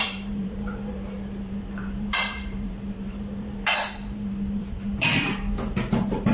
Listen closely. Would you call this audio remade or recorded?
remade